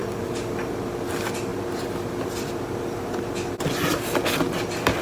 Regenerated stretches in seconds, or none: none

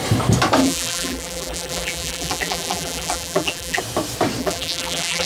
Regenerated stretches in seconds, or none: 0.6-3.8 (vocoder, BigVGAN v2); 4.4-5.3

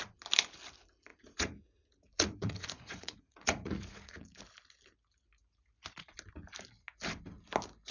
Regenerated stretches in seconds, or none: 1.1-4.4 (vocoder, Vocos)

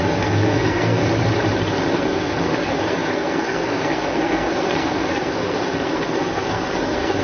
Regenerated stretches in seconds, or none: 0.0-1.0 (codec, SNAC); 1.9-7.2

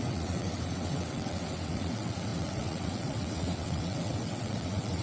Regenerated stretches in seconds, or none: 0.0-5.0 (vocoder, WaveNeXt)

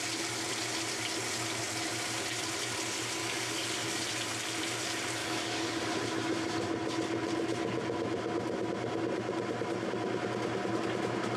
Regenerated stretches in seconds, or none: 3.2-4.0 (codec, DAC); 5.2-5.9

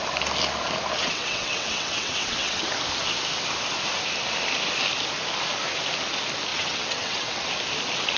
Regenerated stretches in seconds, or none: 1.0-2.7 (vocoder, WaveNeXt); 6.5-7.5

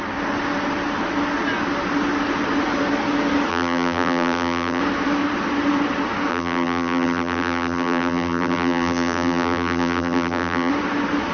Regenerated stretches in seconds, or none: 3.5-4.8 (vocoder, BigVGAN v2); 6.3-10.7